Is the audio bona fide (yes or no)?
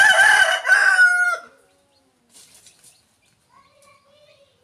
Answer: yes